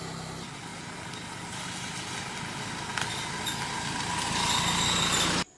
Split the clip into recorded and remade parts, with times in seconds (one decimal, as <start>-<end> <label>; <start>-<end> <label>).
0.0-5.6 recorded